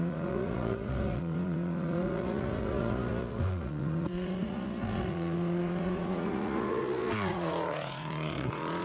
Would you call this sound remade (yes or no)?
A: yes